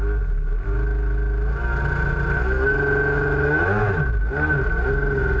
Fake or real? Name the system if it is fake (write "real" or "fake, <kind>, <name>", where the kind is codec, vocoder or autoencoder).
real